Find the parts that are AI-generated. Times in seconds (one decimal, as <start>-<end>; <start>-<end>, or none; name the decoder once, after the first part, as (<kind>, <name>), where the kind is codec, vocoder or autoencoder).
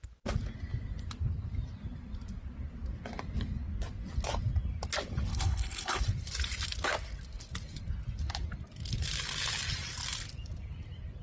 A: 5.3-6.0 (codec, HILCodec)